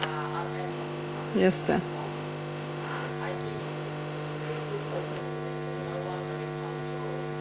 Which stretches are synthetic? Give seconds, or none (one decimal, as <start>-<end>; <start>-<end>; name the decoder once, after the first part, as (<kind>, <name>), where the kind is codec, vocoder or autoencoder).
0.7-3.1 (autoencoder, DAC-VAE); 3.6-5.2